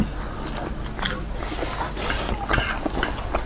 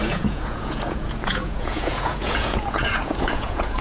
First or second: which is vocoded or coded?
second